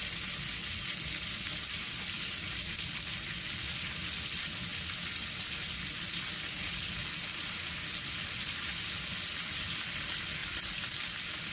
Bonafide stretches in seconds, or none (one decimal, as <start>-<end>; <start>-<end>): 0.0-11.5